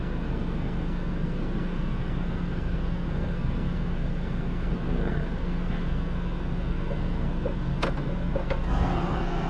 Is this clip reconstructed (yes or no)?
yes